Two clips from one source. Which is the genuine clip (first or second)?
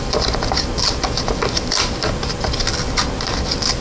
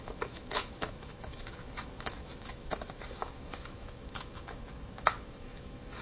first